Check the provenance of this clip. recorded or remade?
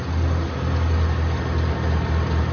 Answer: recorded